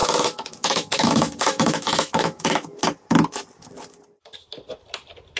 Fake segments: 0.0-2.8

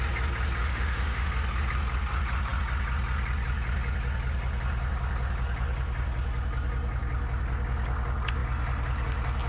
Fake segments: 0.6-1.3

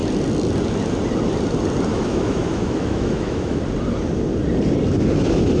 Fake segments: 1.9-3.6

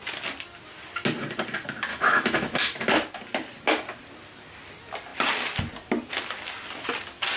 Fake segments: 1.9-2.9

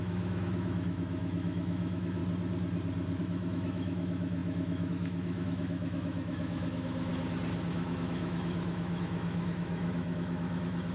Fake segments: 0.0-2.2; 3.2-7.1; 7.7-10.9

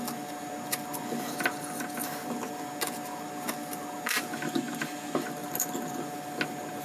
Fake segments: none